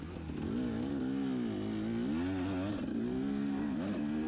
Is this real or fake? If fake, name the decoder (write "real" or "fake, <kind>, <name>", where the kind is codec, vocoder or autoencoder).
real